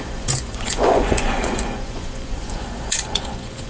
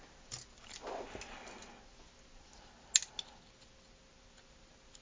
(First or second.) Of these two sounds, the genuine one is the second